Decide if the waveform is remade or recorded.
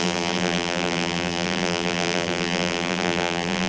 remade